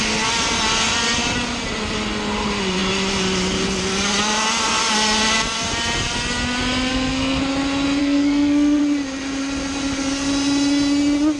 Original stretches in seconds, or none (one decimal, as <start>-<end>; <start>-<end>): 0.0-6.9; 7.4-8.0; 8.8-11.4